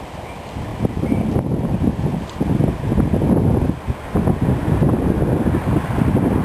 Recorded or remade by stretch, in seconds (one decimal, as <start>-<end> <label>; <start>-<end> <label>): 0.0-6.4 recorded